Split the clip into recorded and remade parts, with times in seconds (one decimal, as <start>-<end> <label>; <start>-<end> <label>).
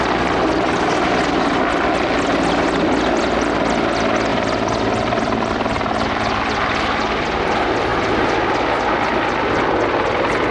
0.0-4.3 recorded; 4.3-5.5 remade; 5.5-10.5 recorded